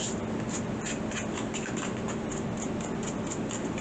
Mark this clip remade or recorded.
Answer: recorded